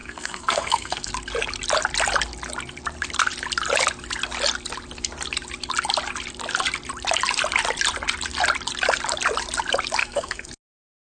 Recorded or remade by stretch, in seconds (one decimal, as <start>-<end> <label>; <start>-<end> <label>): 0.0-1.1 remade; 1.1-10.0 recorded; 10.0-10.5 remade; 10.5-11.1 recorded